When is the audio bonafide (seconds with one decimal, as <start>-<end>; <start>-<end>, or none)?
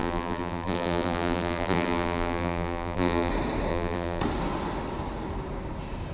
3.3-3.7; 4.2-6.1